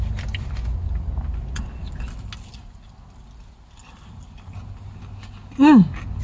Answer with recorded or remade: recorded